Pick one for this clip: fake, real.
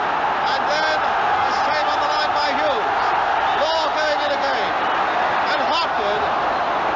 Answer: real